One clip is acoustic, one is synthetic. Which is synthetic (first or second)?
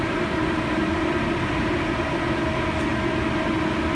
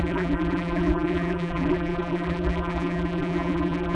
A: second